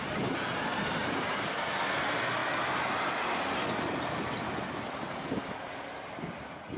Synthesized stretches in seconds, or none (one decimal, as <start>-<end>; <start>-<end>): 1.0-1.5